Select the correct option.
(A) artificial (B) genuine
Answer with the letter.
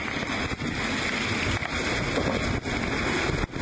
B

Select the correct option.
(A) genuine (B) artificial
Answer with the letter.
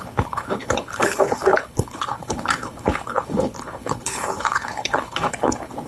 B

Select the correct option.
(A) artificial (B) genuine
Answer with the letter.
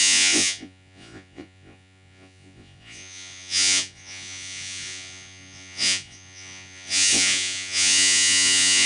A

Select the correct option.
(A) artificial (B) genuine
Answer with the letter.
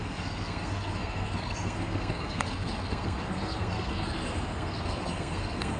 A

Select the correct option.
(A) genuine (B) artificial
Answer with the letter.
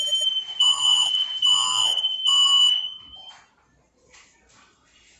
B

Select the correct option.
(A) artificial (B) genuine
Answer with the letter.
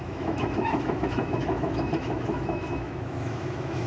A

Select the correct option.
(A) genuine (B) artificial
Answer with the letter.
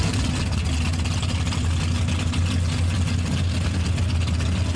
A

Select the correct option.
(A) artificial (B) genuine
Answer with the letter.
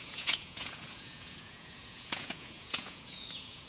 A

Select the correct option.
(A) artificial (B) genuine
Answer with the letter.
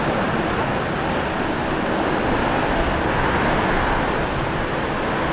B